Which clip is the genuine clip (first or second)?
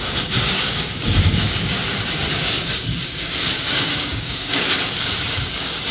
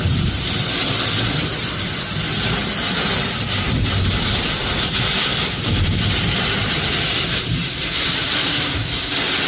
second